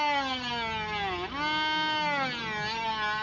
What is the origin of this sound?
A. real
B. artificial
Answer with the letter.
A